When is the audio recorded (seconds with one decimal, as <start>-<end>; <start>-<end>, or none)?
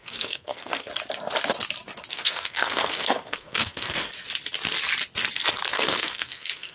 0.9-2.1; 4.1-5.7